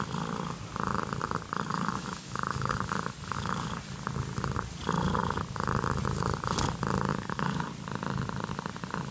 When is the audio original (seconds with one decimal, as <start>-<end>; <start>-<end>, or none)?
0.0-1.7; 3.7-7.1; 7.7-9.1